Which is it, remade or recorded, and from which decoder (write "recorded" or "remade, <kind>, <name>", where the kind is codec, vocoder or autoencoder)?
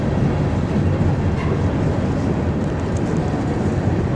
recorded